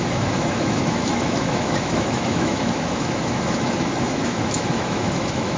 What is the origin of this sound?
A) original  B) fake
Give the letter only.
B